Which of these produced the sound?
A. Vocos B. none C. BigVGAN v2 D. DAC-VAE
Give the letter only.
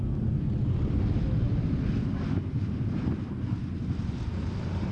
B